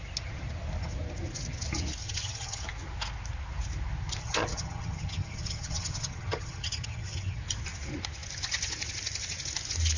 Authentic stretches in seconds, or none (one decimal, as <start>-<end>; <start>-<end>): 0.0-2.0; 2.6-4.2; 7.4-10.0